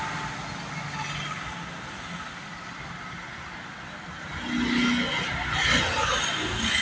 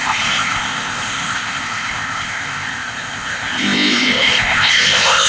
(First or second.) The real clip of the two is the first